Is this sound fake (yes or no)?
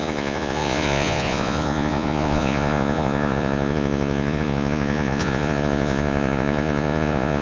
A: yes